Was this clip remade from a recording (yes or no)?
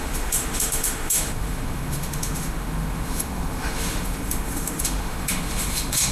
yes